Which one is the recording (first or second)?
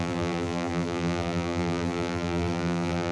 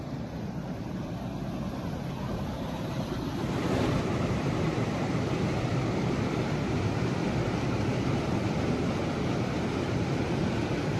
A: second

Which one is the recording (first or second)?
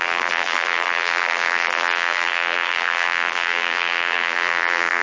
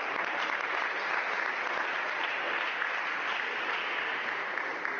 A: second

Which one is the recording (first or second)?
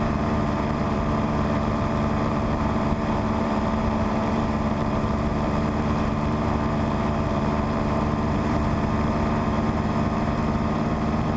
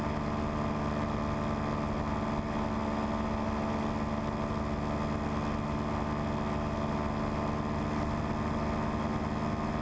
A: second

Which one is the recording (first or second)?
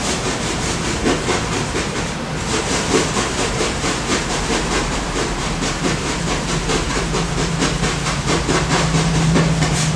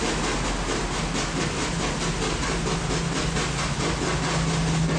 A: second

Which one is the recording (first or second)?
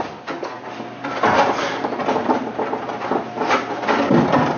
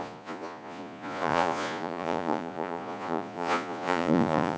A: first